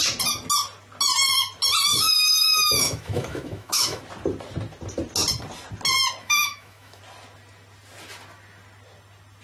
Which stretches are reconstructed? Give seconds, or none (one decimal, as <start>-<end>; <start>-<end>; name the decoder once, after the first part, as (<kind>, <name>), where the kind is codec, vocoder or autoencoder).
1.9-4.0 (autoencoder, DAC-VAE); 6.2-7.0